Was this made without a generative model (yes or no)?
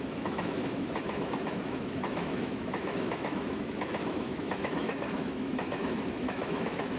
no